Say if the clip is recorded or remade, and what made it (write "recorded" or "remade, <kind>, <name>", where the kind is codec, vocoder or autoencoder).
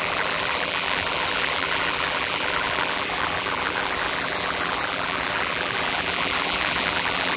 remade, vocoder, BigVGAN v2